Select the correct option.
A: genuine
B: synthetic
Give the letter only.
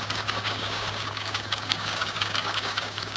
B